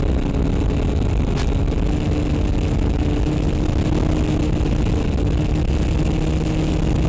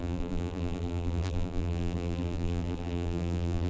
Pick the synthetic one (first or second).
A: second